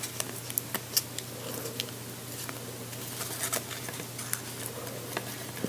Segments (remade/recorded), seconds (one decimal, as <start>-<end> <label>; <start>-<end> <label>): 0.0-5.7 recorded